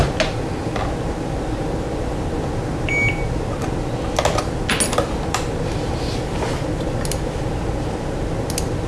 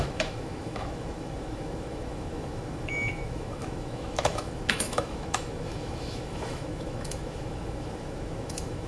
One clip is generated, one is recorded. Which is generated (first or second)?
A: second